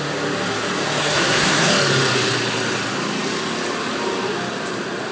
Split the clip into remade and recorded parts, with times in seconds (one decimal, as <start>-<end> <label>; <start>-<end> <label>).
0.0-1.0 recorded; 1.0-1.7 remade; 1.7-5.1 recorded